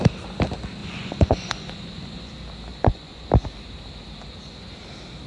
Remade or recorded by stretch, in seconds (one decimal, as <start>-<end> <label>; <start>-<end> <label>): 0.0-0.8 recorded; 0.8-2.3 remade; 2.3-2.7 recorded; 2.7-3.3 remade; 3.3-5.3 recorded